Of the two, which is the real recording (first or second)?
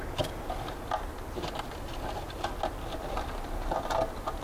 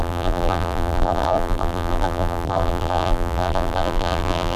first